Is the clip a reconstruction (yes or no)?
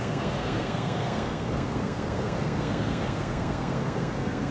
yes